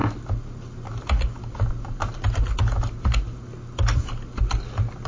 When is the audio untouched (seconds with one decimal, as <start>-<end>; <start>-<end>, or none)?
0.0-5.1